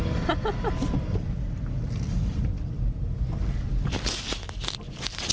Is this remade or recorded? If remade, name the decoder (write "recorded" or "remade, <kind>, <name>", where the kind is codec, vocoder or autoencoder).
recorded